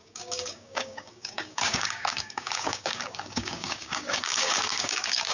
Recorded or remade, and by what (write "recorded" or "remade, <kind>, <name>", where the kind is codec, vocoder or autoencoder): remade, codec, DAC